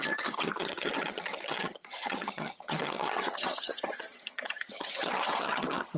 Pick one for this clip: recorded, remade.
remade